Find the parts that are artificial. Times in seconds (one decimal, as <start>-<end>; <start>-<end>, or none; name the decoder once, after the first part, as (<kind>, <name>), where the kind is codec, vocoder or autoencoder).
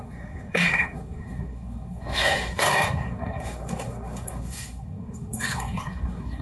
0.0-6.4 (codec, SNAC)